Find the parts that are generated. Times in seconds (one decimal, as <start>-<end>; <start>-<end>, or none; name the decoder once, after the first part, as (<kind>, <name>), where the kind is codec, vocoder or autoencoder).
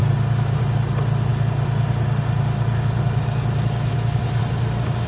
none